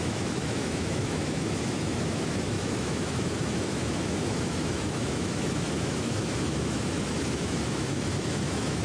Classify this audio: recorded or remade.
remade